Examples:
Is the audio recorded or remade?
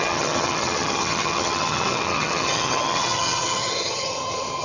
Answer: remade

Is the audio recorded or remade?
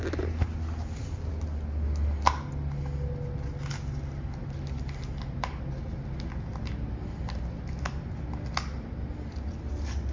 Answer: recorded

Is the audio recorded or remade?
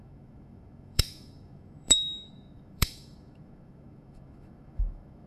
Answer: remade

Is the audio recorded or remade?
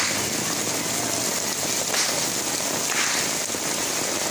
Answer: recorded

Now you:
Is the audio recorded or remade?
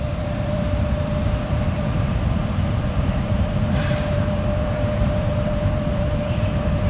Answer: remade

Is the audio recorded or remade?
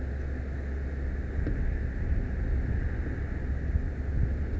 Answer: recorded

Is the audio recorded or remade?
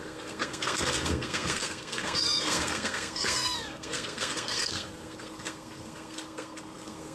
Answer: remade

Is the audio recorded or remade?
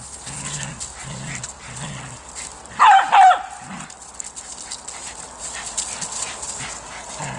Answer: recorded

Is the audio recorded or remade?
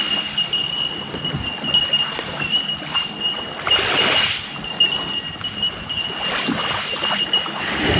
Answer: recorded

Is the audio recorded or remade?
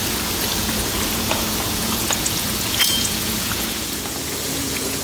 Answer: remade